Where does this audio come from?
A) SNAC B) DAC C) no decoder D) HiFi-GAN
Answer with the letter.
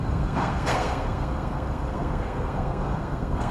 A